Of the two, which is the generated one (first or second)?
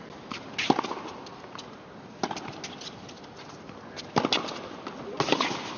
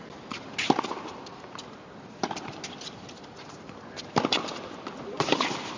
second